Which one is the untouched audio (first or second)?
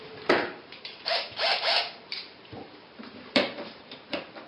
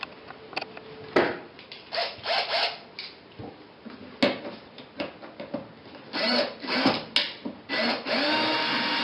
second